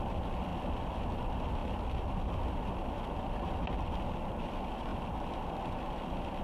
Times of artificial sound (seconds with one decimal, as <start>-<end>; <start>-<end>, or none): none